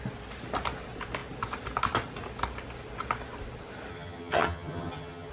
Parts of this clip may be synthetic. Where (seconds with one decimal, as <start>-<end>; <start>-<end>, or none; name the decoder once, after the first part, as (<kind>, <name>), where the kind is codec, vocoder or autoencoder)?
3.9-5.3 (vocoder, HiFi-GAN)

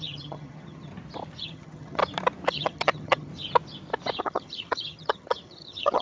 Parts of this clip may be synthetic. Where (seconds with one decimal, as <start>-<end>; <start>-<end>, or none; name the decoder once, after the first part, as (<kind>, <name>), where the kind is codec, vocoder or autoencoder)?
0.0-0.9 (vocoder, HiFi-GAN); 1.4-2.0; 2.5-3.3; 4.2-6.0